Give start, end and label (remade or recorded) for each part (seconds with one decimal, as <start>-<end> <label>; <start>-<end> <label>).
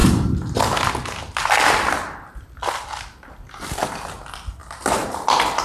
0.0-4.6 recorded; 4.6-5.6 remade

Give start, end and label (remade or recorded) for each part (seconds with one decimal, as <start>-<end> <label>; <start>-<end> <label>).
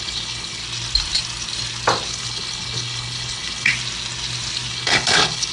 0.0-0.6 remade; 0.6-2.1 recorded; 2.1-3.7 remade; 3.7-4.7 recorded; 4.7-5.5 remade